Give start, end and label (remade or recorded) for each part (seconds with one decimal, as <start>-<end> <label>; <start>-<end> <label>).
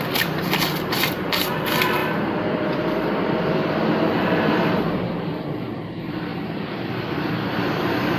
0.0-8.2 remade